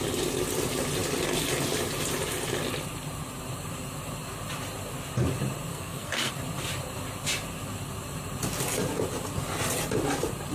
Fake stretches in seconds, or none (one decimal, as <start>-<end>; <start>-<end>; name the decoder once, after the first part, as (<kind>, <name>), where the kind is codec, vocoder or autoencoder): 5.7-6.3 (codec, SNAC)